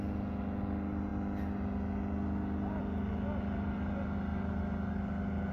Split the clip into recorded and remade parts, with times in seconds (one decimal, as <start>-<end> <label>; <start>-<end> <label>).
0.0-5.5 recorded